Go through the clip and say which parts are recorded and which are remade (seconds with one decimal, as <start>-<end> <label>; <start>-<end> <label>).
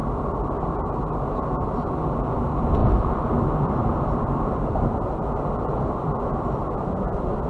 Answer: 0.0-2.8 recorded; 2.8-7.5 remade